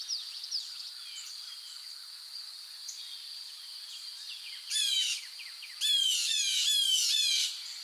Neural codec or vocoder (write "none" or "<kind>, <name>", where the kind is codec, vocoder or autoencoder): none